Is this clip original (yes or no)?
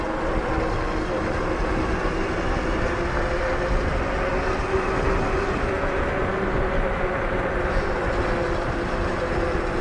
yes